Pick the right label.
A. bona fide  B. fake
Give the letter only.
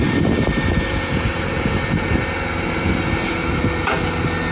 A